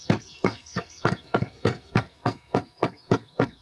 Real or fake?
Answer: fake